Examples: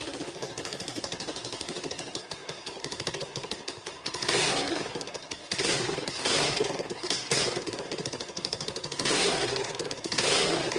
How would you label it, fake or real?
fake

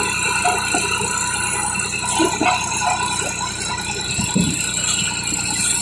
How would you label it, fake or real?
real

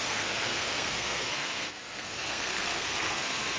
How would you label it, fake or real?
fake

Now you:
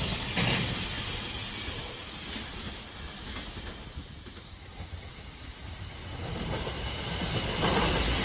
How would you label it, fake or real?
real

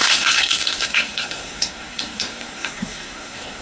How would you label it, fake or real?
fake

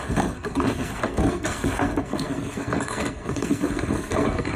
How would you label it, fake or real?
fake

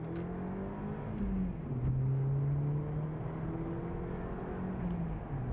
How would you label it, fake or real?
real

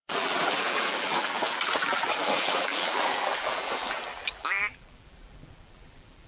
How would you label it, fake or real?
fake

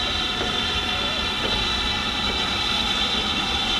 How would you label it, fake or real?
real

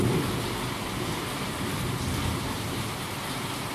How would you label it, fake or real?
real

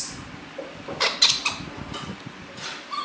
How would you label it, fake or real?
real